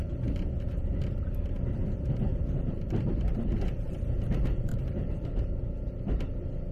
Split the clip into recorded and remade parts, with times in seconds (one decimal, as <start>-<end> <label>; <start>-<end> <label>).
0.0-2.3 recorded; 2.3-4.0 remade; 4.0-4.7 recorded; 4.7-6.2 remade; 6.2-6.7 recorded